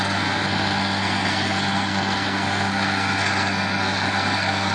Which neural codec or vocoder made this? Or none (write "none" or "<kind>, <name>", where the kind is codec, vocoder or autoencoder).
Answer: codec, SNAC